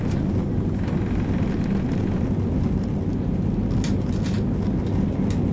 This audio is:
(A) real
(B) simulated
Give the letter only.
A